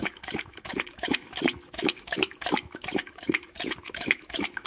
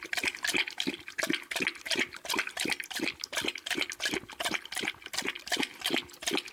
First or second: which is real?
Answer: second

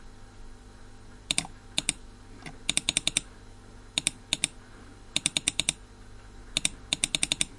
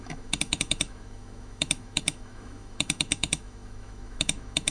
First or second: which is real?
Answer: first